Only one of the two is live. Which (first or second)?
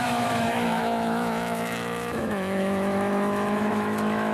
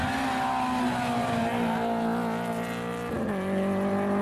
second